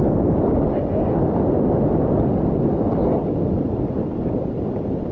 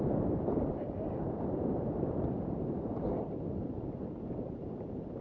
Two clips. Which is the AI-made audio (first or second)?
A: second